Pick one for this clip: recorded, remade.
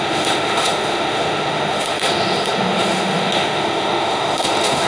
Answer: remade